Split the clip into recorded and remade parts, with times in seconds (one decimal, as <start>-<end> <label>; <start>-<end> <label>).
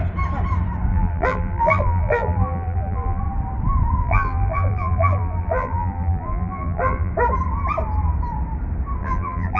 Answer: 0.0-0.9 recorded; 0.9-3.2 remade; 3.2-4.0 recorded; 4.0-7.1 remade; 7.1-9.0 recorded; 9.0-9.6 remade